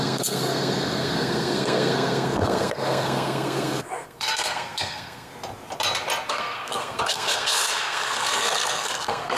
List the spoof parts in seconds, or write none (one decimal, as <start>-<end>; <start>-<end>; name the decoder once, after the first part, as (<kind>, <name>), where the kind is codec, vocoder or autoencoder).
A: 0.0-5.3 (codec, SNAC); 6.3-9.4